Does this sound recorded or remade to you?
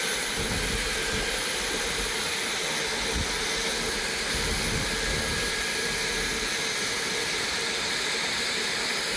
recorded